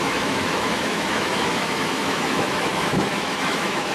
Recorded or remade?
remade